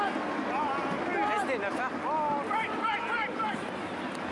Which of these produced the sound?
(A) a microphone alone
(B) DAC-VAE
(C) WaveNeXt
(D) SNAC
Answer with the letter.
A